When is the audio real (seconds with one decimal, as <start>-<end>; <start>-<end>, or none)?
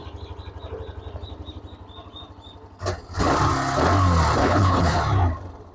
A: 0.0-4.4; 5.0-5.7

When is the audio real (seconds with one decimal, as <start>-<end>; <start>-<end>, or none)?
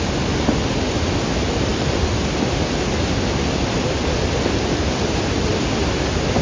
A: 0.0-6.4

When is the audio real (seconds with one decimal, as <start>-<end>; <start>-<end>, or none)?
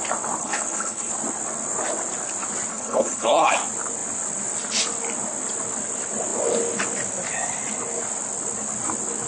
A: 0.0-0.4; 1.1-2.7; 3.5-9.3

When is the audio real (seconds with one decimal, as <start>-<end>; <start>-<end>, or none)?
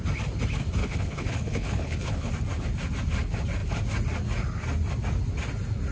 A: 0.0-0.8; 2.3-5.9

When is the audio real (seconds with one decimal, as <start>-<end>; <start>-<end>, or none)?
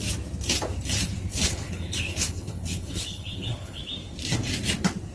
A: 0.0-1.3; 3.8-5.1